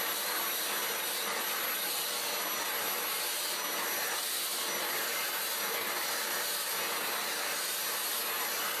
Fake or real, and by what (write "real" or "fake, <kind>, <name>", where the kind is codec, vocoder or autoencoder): real